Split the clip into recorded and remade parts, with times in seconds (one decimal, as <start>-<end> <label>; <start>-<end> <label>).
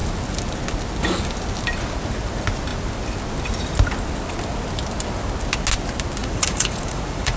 0.0-6.2 recorded; 6.2-7.4 remade